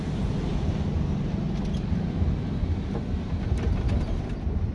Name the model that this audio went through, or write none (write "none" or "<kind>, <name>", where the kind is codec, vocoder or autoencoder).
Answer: none